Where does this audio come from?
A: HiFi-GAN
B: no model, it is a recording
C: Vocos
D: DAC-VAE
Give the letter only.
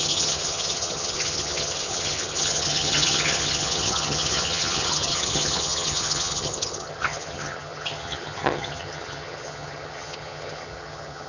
A